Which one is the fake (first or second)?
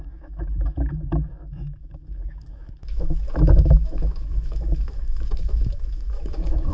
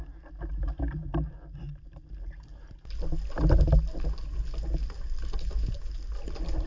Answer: first